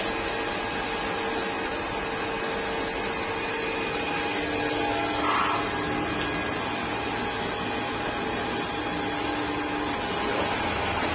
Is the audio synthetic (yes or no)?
no